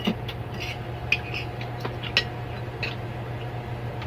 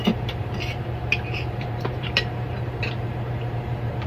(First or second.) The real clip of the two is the first